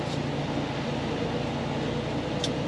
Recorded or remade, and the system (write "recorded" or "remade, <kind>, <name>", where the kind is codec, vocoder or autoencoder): recorded